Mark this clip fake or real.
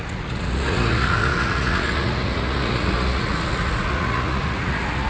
fake